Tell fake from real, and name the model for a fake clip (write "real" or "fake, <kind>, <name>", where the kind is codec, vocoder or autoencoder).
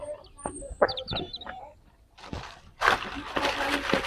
fake, vocoder, BigVGAN v2